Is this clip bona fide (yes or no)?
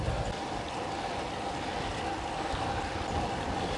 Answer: yes